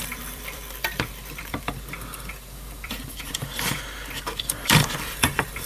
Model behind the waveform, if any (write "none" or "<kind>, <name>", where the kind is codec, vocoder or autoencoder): vocoder, BigVGAN v2